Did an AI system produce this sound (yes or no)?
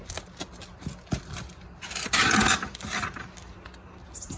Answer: no